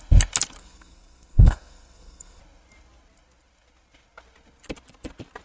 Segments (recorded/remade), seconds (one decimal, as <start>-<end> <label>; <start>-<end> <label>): 0.0-0.6 recorded; 0.6-2.4 remade; 2.4-5.4 recorded